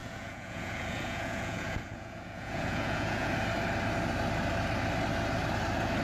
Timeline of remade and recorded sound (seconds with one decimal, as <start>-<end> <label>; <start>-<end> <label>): 0.0-3.3 remade; 3.3-6.0 recorded